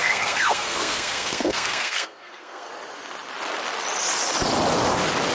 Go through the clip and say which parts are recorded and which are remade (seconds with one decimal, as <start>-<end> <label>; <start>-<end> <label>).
0.0-2.7 remade; 2.7-5.3 recorded